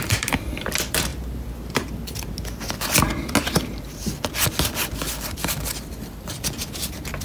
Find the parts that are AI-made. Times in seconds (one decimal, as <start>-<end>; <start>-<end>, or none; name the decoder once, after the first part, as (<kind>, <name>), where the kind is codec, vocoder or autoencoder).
0.0-1.1 (vocoder, BigVGAN v2); 5.3-7.2